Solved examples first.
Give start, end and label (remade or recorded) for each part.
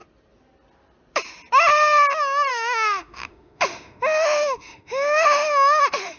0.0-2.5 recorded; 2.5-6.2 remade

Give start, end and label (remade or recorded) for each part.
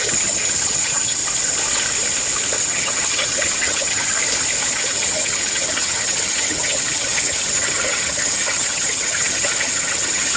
0.0-1.2 remade; 1.2-2.6 recorded; 2.6-4.2 remade; 4.2-4.7 recorded; 4.7-10.4 remade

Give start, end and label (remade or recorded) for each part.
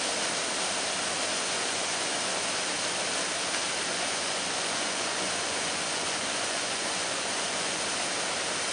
0.0-1.3 recorded; 1.3-2.5 remade; 2.5-3.9 recorded; 3.9-7.8 remade; 7.8-8.7 recorded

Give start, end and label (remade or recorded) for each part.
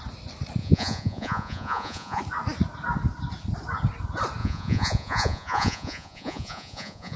0.0-0.6 recorded; 0.6-2.2 remade; 2.2-4.4 recorded; 4.4-7.2 remade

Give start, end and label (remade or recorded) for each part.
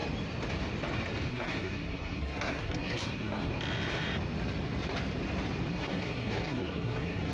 0.0-1.3 recorded; 1.3-3.5 remade; 3.5-5.7 recorded; 5.7-7.3 remade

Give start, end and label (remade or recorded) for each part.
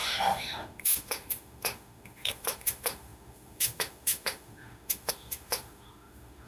0.0-6.5 remade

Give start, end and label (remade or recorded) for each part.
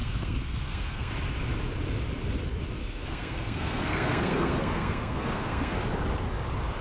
0.0-1.1 remade; 1.1-2.8 recorded; 2.8-5.8 remade; 5.8-6.8 recorded